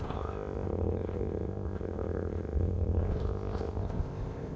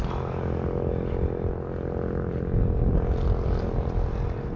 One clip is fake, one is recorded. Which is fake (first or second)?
first